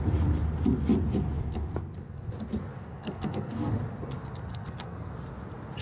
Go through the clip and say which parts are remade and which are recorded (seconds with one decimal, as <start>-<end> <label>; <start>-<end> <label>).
0.0-2.7 recorded; 2.7-3.7 remade; 3.7-4.5 recorded; 4.5-5.1 remade; 5.1-5.8 recorded